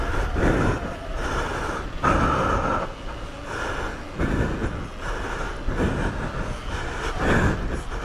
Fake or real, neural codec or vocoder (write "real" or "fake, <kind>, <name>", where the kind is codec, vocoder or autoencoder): real